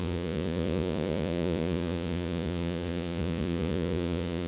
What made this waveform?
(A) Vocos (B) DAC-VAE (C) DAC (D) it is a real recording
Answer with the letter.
A